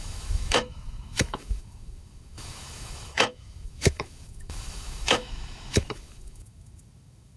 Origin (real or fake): fake